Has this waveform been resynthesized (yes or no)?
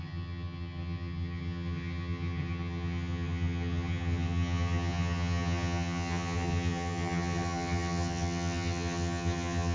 yes